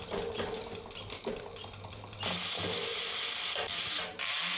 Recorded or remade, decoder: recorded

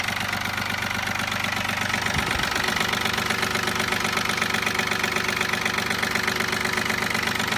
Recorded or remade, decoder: recorded